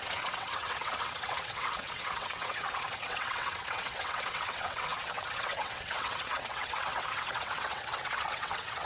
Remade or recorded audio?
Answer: remade